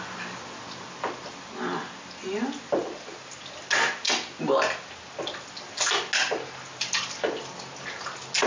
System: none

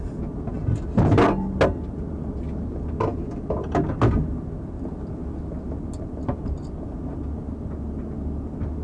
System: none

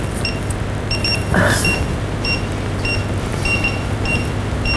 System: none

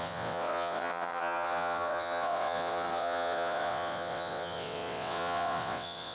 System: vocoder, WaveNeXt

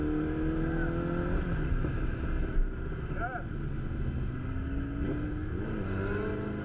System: none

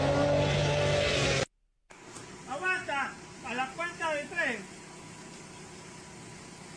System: none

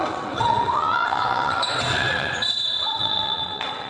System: vocoder, WaveNeXt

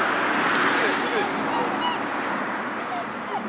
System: none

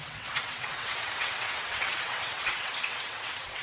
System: vocoder, WaveNeXt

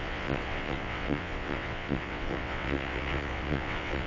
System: vocoder, WaveNeXt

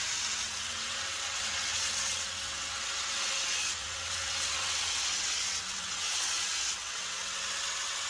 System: vocoder, WaveNeXt